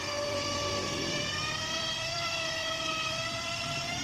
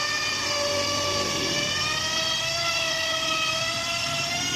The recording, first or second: second